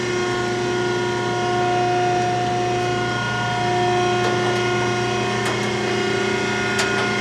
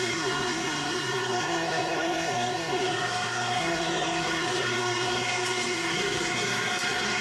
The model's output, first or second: second